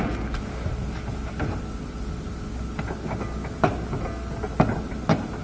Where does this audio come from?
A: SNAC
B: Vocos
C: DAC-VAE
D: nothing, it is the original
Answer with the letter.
D